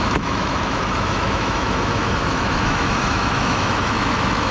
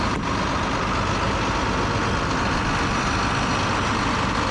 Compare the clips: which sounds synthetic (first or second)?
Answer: first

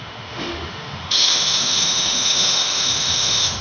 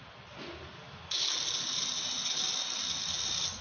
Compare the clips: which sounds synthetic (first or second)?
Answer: first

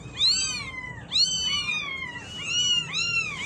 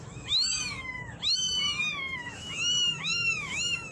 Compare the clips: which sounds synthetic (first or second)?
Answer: second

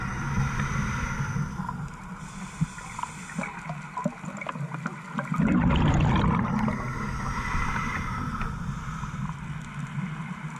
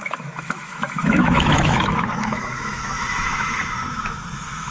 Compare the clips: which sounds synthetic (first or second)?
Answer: second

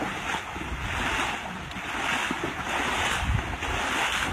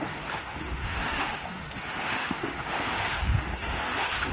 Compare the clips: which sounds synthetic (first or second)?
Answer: second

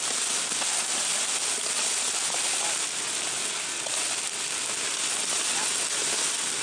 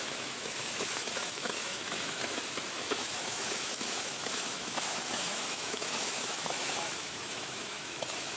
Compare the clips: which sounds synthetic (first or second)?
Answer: second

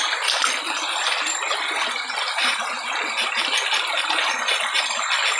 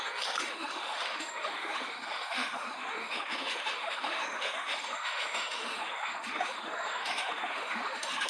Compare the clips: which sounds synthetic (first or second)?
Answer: second